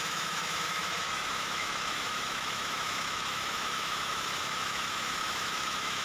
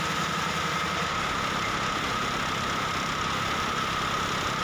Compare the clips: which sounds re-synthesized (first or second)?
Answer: first